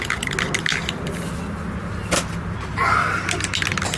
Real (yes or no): yes